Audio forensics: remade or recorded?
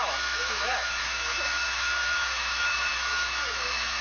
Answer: remade